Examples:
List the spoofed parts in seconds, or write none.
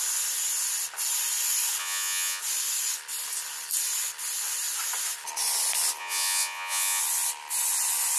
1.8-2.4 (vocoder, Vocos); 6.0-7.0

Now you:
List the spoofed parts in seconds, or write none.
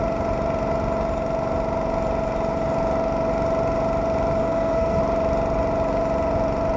4.4-5.0 (codec, SNAC)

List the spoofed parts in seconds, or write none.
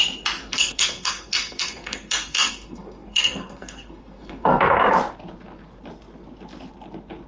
0.4-4.8 (codec, SNAC)